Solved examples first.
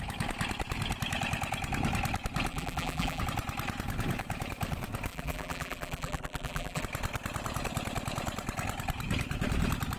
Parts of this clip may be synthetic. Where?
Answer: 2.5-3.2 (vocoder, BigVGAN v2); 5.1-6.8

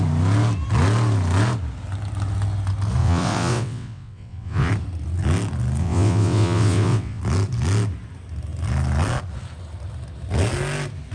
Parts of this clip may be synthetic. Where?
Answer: 3.0-4.7 (vocoder, WaveNeXt); 5.8-7.2

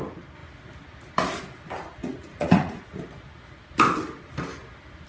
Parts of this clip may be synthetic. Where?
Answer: 2.0-2.8 (vocoder, Vocos)